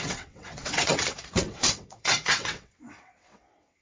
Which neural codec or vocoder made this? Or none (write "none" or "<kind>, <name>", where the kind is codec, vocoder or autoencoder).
vocoder, WaveNeXt